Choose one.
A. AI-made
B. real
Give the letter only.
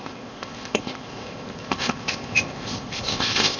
A